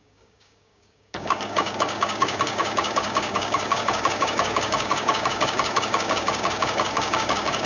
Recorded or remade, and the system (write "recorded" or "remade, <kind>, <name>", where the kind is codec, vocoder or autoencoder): remade, codec, DAC